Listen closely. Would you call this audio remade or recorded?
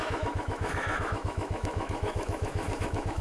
remade